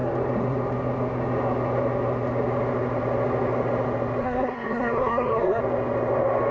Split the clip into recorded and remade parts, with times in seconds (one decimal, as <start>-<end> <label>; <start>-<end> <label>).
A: 0.0-4.2 recorded; 4.2-5.6 remade; 5.6-6.5 recorded